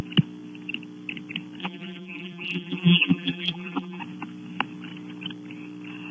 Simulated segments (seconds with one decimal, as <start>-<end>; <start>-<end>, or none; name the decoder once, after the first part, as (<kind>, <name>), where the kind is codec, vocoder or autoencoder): 1.6-4.0 (vocoder, BigVGAN v2)

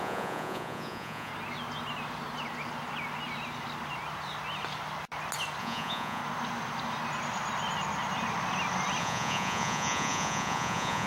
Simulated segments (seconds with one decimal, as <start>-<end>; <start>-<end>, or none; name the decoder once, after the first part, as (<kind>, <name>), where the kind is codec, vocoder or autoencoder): 0.0-1.3 (vocoder, Vocos); 5.6-6.2; 9.0-11.1

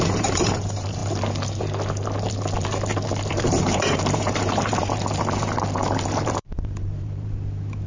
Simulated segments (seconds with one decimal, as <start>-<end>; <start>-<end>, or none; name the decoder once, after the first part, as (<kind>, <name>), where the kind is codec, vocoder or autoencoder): 0.0-1.0 (vocoder, BigVGAN v2); 3.3-7.9

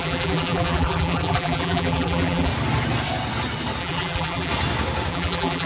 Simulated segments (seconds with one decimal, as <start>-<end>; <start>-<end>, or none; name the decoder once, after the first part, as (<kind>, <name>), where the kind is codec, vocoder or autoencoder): 0.0-2.5 (vocoder, BigVGAN v2); 3.8-4.5; 5.1-5.7